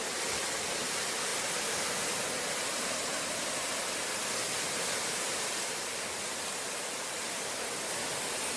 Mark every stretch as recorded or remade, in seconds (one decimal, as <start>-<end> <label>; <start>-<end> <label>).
0.0-8.6 recorded

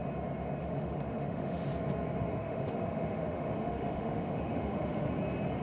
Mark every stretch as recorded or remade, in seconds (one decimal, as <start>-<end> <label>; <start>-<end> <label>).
0.0-0.6 recorded; 0.6-1.7 remade; 1.7-2.3 recorded; 2.3-5.1 remade; 5.1-5.6 recorded